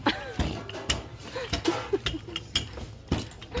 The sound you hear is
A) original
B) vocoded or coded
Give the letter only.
A